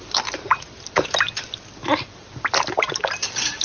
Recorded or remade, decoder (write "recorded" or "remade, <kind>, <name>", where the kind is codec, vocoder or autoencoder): recorded